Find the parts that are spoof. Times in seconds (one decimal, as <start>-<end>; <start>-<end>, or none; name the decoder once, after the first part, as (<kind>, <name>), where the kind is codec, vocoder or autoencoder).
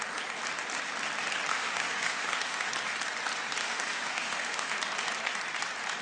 1.5-2.7 (autoencoder, DAC-VAE); 3.6-4.7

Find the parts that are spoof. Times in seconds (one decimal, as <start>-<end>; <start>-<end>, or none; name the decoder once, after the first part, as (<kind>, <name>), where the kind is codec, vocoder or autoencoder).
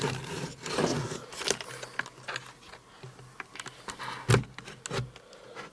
none